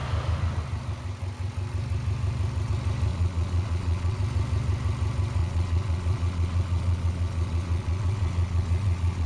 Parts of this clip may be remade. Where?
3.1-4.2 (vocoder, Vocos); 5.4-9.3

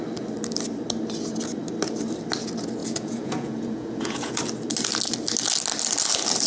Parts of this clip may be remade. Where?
2.8-4.4 (vocoder, Vocos)

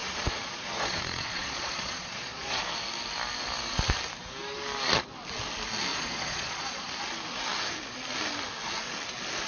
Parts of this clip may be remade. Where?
0.0-2.6 (vocoder, Vocos); 5.9-6.9

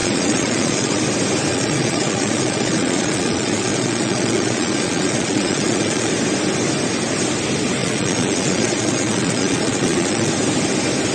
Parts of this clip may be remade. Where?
0.0-1.0 (vocoder, Vocos); 1.5-6.1; 7.8-10.3

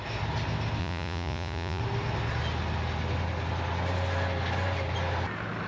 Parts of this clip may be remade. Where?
0.8-1.8 (vocoder, Vocos)